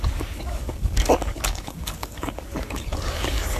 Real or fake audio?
fake